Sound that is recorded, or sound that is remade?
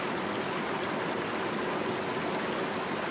recorded